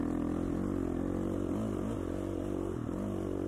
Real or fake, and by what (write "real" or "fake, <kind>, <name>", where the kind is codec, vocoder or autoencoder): real